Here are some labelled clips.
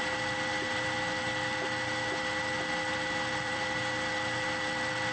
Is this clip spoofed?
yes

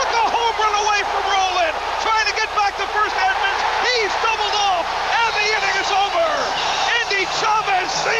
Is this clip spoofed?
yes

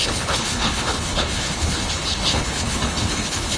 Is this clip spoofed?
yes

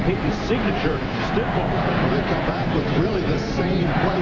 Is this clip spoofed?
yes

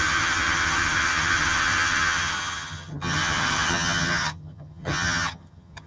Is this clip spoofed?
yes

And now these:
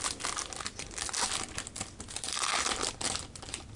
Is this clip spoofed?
no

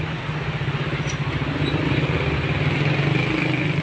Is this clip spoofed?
no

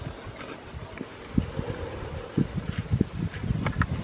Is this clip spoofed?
no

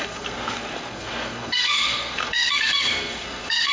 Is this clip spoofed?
yes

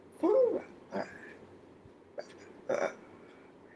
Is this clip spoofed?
no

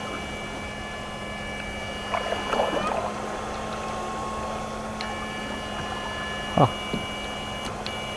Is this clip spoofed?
no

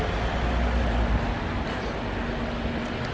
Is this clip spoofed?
no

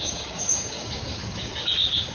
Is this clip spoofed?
yes